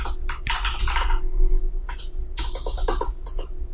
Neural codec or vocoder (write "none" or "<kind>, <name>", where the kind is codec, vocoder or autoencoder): none